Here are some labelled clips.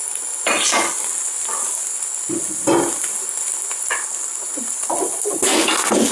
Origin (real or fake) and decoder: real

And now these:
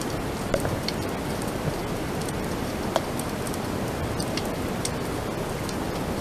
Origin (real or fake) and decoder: real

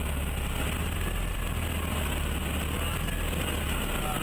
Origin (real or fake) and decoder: real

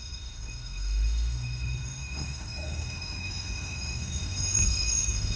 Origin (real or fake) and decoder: fake, autoencoder, DAC-VAE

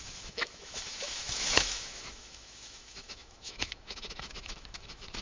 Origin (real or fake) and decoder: fake, autoencoder, DAC-VAE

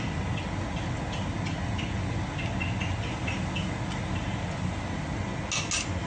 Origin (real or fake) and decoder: real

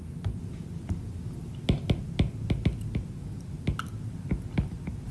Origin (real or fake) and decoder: real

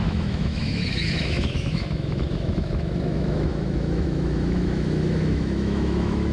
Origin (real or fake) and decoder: fake, autoencoder, DAC-VAE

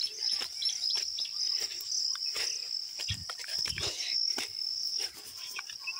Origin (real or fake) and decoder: real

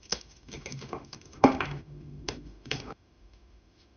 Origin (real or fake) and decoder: fake, autoencoder, DAC-VAE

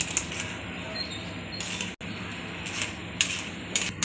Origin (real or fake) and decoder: real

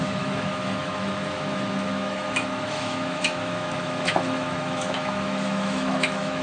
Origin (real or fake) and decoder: fake, autoencoder, DAC-VAE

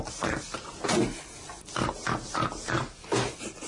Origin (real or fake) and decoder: real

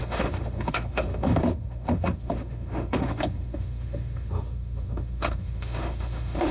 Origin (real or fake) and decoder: fake, autoencoder, DAC-VAE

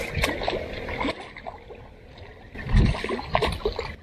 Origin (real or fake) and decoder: real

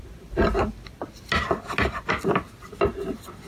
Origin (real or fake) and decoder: real